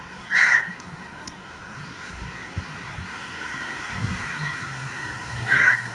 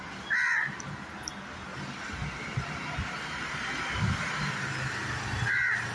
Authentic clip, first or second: second